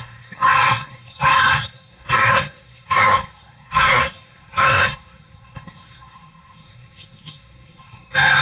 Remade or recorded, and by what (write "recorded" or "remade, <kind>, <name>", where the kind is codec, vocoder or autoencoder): remade, codec, SNAC